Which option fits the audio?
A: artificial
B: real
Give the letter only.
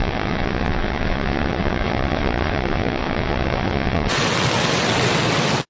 A